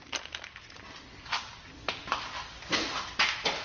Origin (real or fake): real